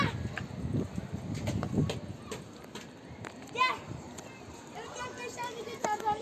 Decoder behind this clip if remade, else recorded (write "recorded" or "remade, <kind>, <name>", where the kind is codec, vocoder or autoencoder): recorded